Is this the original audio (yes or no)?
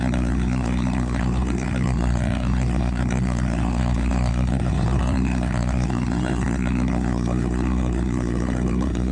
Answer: no